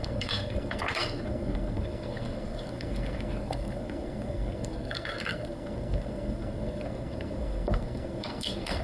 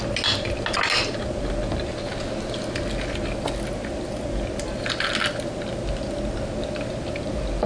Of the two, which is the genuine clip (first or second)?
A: second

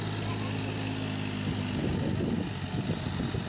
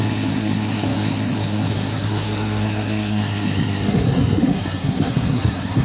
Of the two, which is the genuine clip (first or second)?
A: first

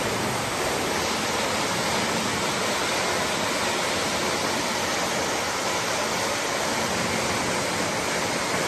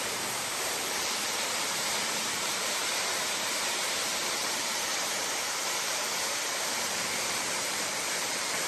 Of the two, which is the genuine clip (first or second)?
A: first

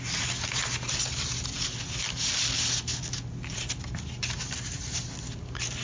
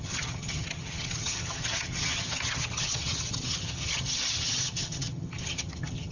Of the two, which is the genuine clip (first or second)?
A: first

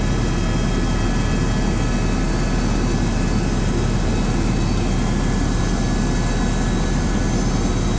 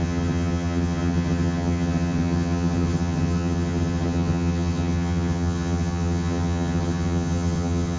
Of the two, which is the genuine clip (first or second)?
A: first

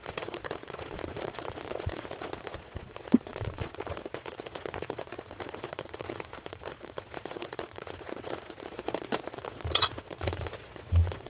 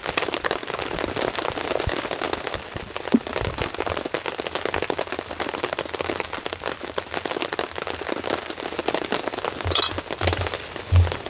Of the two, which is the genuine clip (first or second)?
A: second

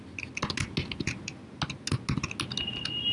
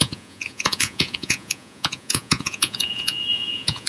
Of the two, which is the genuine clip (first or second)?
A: first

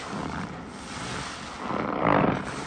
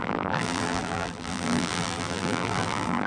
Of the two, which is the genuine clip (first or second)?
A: first